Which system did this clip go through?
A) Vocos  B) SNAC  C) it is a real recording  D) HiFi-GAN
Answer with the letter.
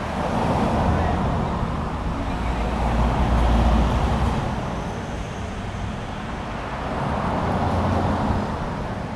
C